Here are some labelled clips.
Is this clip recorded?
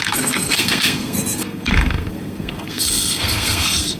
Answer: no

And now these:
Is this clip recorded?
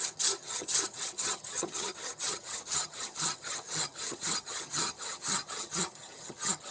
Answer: no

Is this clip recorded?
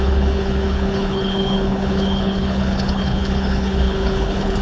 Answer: no